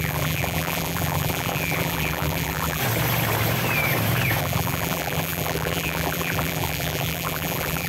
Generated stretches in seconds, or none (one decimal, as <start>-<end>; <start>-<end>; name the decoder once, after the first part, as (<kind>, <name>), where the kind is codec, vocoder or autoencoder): 0.0-2.8 (vocoder, BigVGAN v2); 4.4-7.9